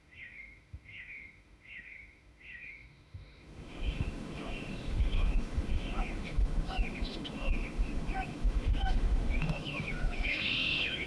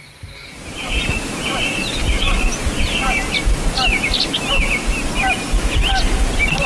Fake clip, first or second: first